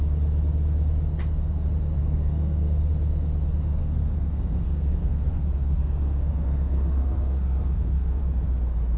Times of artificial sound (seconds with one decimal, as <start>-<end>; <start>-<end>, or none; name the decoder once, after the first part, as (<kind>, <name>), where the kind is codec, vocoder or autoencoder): 2.0-2.9 (codec, SNAC); 3.8-8.2